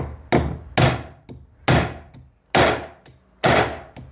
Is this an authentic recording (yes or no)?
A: yes